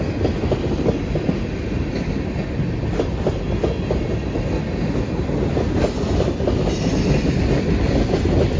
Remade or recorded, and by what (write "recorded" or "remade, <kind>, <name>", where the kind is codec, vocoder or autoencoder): recorded